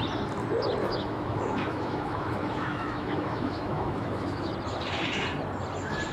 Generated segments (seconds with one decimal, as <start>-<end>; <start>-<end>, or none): 0.8-4.5

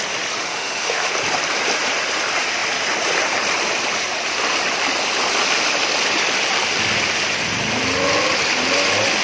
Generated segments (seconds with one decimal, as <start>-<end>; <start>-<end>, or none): 0.5-1.1

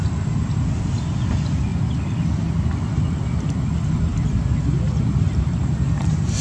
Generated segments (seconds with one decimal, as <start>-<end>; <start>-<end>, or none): none

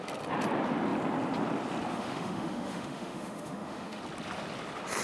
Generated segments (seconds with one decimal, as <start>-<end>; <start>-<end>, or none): 1.9-4.0

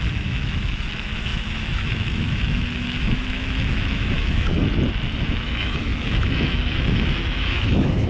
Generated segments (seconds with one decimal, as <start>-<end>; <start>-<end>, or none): 0.0-4.5; 5.2-8.1

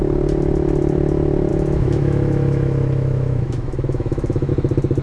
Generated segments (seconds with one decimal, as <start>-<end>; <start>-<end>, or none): 1.5-4.5